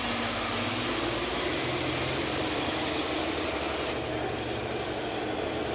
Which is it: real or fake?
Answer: real